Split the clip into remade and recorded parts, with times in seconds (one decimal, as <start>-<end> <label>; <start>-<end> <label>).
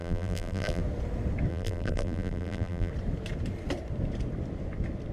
0.0-0.8 remade; 0.8-1.5 recorded; 1.5-2.9 remade; 2.9-5.1 recorded